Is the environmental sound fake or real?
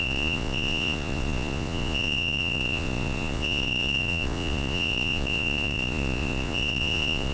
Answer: fake